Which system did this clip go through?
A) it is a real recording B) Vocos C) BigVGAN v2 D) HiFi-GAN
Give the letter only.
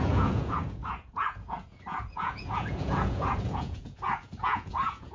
B